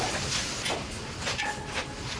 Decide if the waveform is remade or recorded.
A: recorded